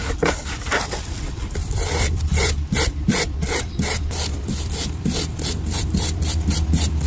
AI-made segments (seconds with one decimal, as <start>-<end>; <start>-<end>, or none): 1.6-3.6